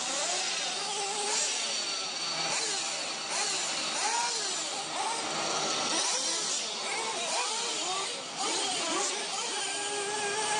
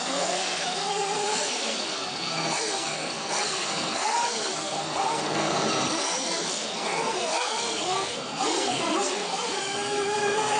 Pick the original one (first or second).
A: first